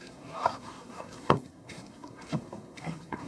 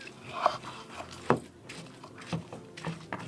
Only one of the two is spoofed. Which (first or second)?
first